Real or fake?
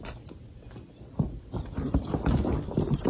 real